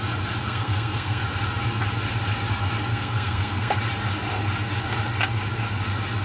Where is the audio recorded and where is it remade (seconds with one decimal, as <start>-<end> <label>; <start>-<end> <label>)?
0.0-0.4 recorded; 0.4-1.2 remade; 1.2-2.9 recorded; 2.9-3.8 remade; 3.8-6.2 recorded